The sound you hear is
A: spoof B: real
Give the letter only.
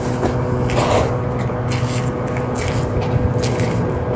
B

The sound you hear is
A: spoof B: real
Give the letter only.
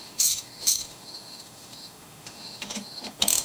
A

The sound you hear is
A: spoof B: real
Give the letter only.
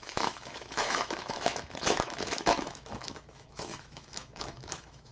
A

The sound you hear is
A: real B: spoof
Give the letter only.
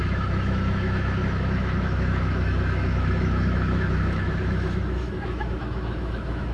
B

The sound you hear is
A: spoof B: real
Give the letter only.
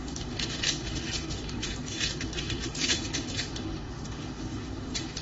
A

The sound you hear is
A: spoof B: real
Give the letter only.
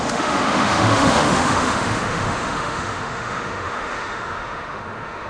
A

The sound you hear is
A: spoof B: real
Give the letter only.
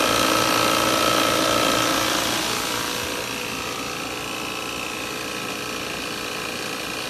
B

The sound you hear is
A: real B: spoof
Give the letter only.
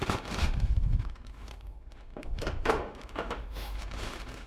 B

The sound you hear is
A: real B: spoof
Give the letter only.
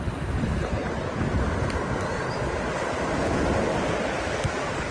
A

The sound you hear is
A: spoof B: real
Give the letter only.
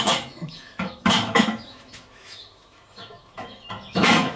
A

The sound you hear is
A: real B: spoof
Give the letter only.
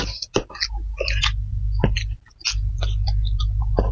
A